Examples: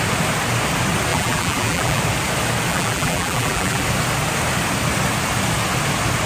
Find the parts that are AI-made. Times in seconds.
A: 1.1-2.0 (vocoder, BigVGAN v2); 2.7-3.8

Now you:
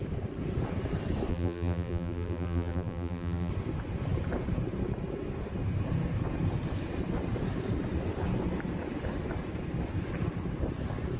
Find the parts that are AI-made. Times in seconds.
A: 1.3-3.5 (vocoder, BigVGAN v2)

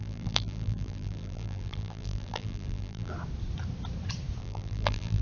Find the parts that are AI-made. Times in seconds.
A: 0.0-3.1 (vocoder, BigVGAN v2); 4.4-5.2

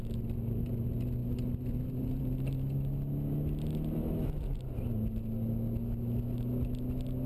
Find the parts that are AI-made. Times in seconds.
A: 1.2-2.2 (vocoder, BigVGAN v2)

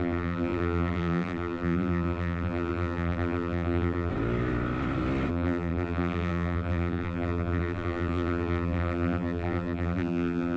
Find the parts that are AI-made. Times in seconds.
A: 0.0-4.1 (vocoder, BigVGAN v2); 5.3-10.6

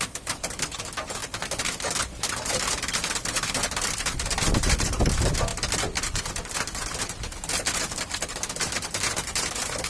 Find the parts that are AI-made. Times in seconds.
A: none